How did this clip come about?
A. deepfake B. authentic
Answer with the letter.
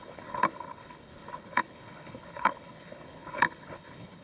A